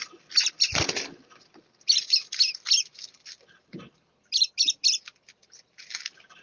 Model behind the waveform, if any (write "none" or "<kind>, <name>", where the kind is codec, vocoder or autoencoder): none